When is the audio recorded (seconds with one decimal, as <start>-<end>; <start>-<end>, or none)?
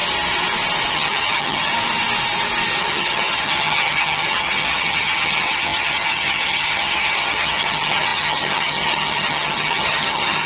0.0-0.9; 1.7-2.8